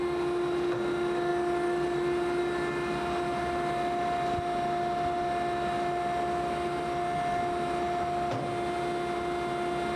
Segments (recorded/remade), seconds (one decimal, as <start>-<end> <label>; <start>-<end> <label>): 0.0-10.0 recorded